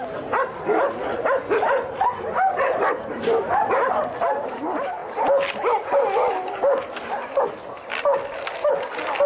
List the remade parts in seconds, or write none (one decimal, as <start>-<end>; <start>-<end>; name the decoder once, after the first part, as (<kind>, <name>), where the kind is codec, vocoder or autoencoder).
none